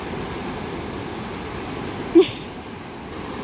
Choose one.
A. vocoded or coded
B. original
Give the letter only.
B